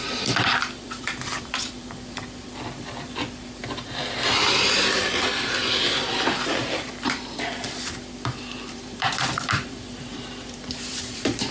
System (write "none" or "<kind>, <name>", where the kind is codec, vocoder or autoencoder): vocoder, BigVGAN v2